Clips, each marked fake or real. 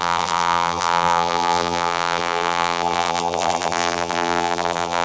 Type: fake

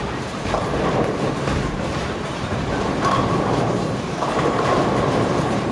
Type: fake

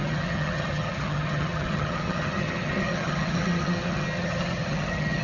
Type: fake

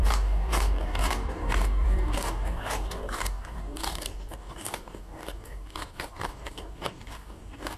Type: fake